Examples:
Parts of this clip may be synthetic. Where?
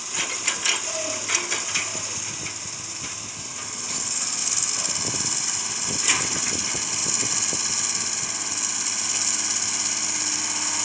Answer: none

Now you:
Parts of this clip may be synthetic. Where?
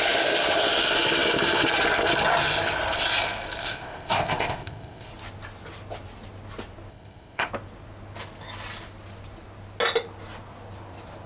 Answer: 3.6-5.1 (codec, ZipCodec); 6.9-7.5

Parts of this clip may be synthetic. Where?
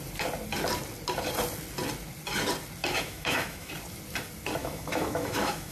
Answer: 2.8-3.7 (autoencoder, DAC-VAE); 4.6-5.7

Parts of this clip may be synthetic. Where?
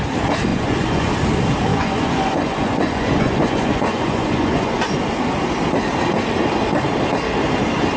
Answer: 0.5-1.1 (vocoder, Vocos); 1.7-4.8